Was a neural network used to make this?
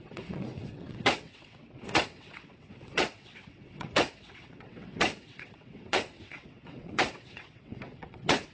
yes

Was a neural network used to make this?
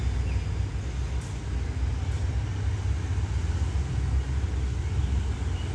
no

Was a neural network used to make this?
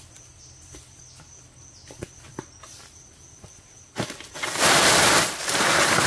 no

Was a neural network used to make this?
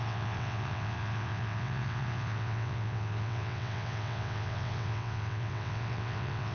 yes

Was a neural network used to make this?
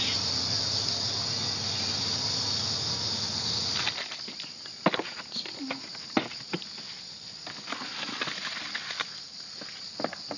no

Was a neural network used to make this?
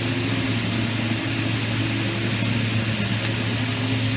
no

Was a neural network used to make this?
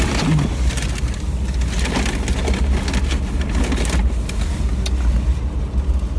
no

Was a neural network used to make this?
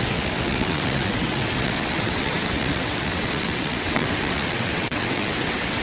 yes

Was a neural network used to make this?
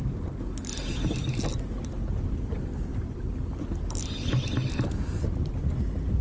no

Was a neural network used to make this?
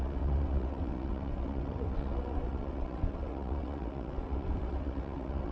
yes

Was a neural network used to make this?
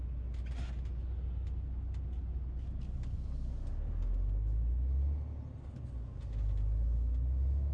no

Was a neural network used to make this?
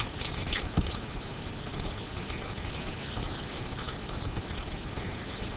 no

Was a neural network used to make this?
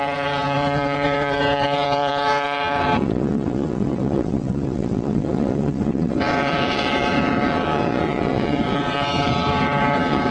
yes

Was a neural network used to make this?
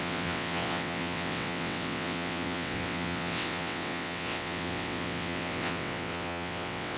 yes